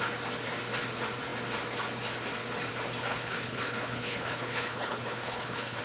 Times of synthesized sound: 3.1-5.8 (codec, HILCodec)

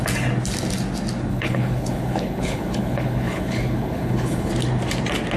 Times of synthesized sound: 1.3-4.5 (codec, HILCodec)

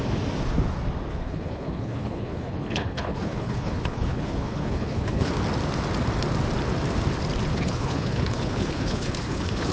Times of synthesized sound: 1.1-5.3 (codec, HILCodec); 7.5-9.7

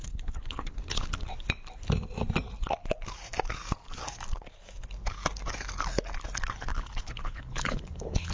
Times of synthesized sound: 0.0-1.1 (codec, HILCodec); 6.7-8.3

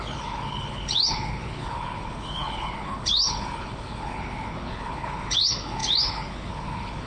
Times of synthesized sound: 0.0-7.1 (codec, HILCodec)

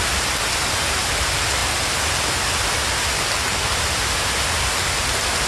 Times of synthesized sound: none

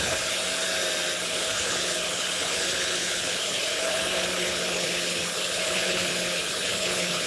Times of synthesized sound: 0.0-0.4 (codec, HILCodec); 1.2-7.3

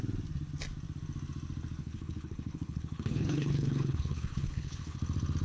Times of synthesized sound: 1.8-5.0 (codec, HILCodec)